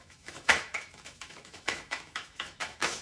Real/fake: fake